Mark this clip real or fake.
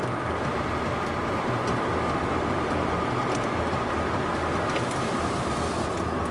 real